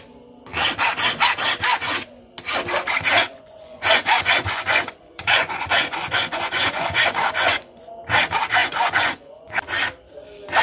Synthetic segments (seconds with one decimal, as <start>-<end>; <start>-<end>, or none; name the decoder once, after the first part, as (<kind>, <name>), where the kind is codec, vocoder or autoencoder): 1.7-2.3 (vocoder, Vocos); 3.2-7.8; 8.6-9.5